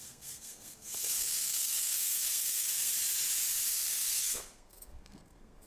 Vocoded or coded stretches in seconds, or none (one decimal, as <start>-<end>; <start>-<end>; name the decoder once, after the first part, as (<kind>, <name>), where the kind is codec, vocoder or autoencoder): 0.0-2.9 (codec, SNAC); 3.7-5.7

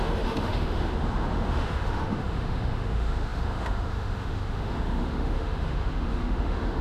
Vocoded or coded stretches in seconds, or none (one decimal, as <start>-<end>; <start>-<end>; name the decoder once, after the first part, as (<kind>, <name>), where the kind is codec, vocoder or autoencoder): 0.0-6.8 (autoencoder, DAC-VAE)

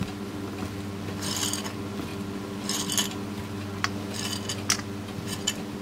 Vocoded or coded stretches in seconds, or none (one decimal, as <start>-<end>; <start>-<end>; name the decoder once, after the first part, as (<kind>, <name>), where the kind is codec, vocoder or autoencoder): none

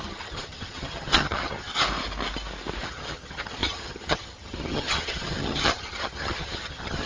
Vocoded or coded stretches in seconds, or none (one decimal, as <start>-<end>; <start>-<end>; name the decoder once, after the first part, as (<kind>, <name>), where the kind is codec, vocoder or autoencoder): 0.0-1.7 (vocoder, HiFi-GAN); 2.8-7.1

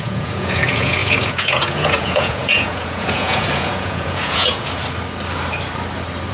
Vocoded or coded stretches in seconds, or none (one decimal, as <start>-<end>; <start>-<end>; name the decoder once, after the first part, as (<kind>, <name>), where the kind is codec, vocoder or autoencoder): 0.0-4.8 (vocoder, Vocos)

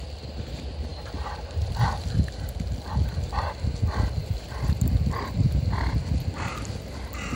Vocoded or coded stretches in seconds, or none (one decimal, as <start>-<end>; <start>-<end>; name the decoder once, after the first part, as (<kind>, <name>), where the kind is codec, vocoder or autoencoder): 0.9-1.8 (vocoder, BigVGAN v2); 4.2-4.9

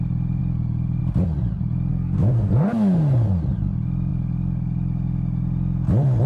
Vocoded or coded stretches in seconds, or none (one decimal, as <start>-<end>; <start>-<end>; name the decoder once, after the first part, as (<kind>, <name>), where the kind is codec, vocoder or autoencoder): 1.9-2.7 (codec, SNAC)